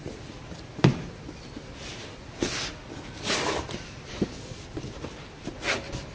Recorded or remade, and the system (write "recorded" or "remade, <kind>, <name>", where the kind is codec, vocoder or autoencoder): recorded